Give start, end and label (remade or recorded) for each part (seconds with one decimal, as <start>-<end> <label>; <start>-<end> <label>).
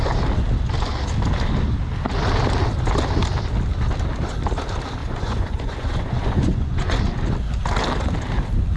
0.0-5.0 recorded; 5.0-7.0 remade; 7.0-8.8 recorded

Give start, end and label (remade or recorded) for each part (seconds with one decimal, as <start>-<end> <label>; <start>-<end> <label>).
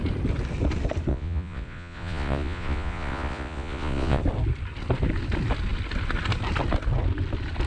0.0-1.1 recorded; 1.1-4.2 remade; 4.2-7.7 recorded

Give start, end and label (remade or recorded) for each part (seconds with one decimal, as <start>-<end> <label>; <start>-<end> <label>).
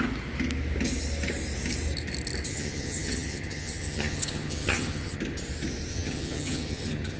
0.0-2.5 recorded; 2.5-5.2 remade; 5.2-5.9 recorded; 5.9-7.2 remade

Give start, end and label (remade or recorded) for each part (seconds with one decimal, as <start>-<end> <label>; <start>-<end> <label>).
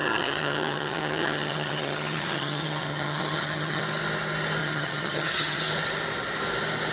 0.0-3.8 remade; 3.8-4.6 recorded; 4.6-5.6 remade; 5.6-6.9 recorded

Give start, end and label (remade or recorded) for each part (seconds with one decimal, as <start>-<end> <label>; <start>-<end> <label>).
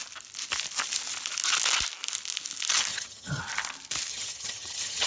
0.0-2.9 recorded; 2.9-3.4 remade; 3.4-4.1 recorded; 4.1-5.1 remade